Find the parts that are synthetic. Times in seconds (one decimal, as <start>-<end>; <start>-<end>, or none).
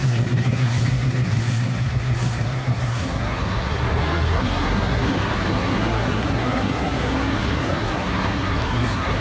0.0-9.2